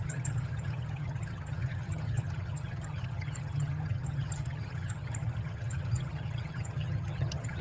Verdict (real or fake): fake